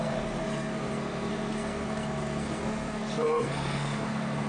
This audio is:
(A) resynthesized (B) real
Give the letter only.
A